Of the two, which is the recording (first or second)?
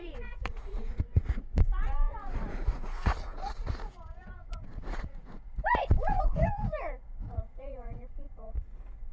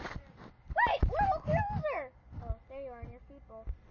second